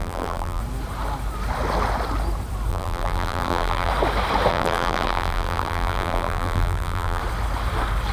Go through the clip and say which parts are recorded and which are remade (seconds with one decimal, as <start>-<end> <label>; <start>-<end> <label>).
0.0-0.6 remade; 0.6-2.7 recorded; 2.7-3.9 remade; 3.9-4.5 recorded; 4.5-7.2 remade; 7.2-8.1 recorded